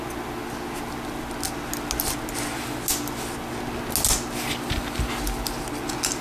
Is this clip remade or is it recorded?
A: recorded